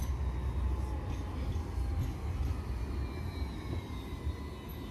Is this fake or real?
real